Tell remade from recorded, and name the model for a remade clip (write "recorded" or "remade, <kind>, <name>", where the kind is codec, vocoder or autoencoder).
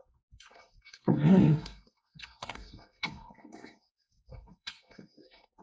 remade, codec, SNAC